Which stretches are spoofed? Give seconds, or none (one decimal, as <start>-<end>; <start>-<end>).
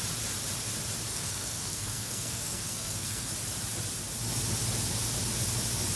1.1-3.3